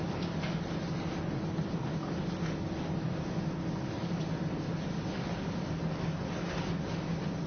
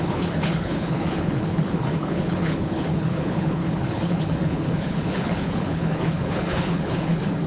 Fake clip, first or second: second